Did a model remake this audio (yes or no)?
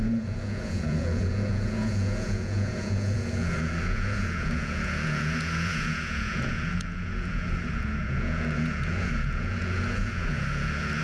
yes